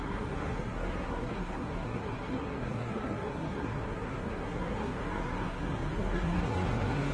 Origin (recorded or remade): remade